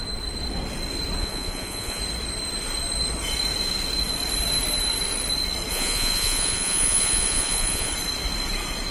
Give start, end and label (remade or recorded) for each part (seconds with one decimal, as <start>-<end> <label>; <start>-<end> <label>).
0.0-1.2 recorded; 1.2-2.0 remade; 2.0-5.7 recorded; 5.7-7.9 remade; 7.9-8.9 recorded

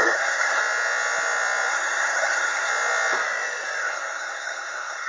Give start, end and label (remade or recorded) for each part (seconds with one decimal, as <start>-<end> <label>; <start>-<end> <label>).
0.0-0.6 remade; 0.6-1.7 recorded; 1.7-2.7 remade; 2.7-3.8 recorded; 3.8-5.1 remade

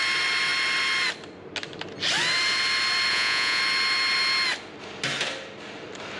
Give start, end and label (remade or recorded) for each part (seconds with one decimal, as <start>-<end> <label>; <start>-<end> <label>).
0.0-3.1 recorded; 3.1-3.6 remade; 3.6-6.2 recorded

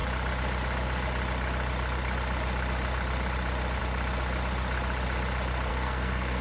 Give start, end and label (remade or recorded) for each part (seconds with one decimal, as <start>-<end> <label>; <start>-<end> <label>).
0.0-5.7 recorded; 5.7-6.4 remade

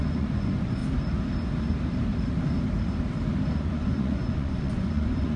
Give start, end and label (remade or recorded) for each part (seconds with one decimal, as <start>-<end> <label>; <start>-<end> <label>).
0.0-0.8 remade; 0.8-3.5 recorded; 3.5-5.4 remade

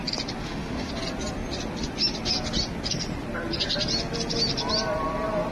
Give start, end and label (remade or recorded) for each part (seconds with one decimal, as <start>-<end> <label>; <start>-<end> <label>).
0.0-0.4 recorded; 0.4-0.9 remade; 0.9-5.5 recorded